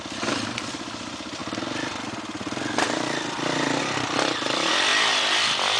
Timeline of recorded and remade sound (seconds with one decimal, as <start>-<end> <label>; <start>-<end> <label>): 0.0-1.4 remade; 1.4-3.8 recorded; 3.8-4.9 remade; 4.9-5.8 recorded